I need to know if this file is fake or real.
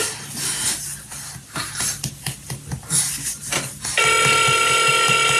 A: real